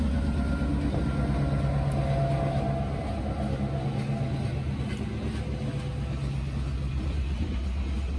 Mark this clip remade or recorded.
recorded